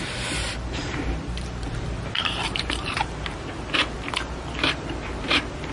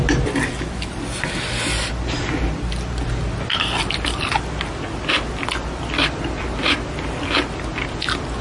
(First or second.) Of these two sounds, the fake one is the first